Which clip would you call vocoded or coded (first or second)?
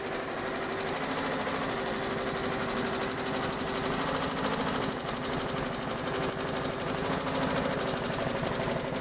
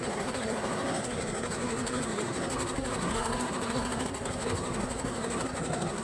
second